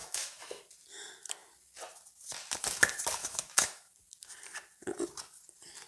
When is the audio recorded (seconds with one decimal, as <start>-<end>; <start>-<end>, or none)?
0.6-3.2; 3.9-5.9